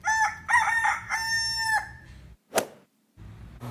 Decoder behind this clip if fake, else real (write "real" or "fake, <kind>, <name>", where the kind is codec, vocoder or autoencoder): real